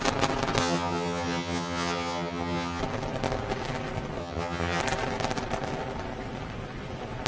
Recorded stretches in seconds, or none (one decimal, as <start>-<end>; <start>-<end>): 0.0-0.6; 2.8-4.2; 4.8-7.3

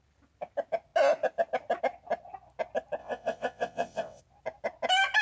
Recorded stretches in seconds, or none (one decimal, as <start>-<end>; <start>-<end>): 0.0-3.0; 4.2-5.2

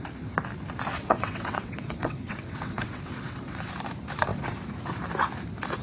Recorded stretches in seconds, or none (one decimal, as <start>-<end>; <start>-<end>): 0.0-0.9; 3.7-5.8

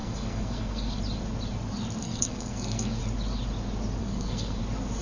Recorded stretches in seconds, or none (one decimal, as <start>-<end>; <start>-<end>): 1.0-2.0; 3.0-4.0; 4.6-5.0